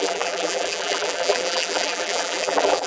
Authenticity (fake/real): fake